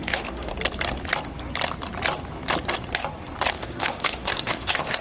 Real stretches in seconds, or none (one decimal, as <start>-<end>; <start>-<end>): 0.5-3.5